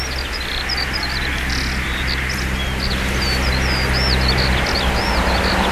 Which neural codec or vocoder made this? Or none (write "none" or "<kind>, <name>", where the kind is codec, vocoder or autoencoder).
none